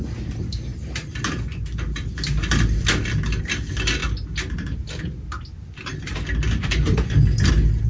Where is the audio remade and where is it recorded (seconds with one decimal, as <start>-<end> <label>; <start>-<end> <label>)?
0.0-7.9 recorded